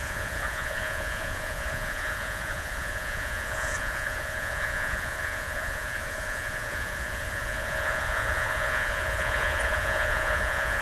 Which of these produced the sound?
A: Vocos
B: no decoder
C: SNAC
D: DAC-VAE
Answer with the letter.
A